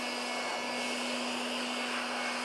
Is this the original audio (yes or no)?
yes